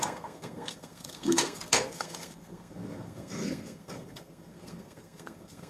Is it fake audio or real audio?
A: fake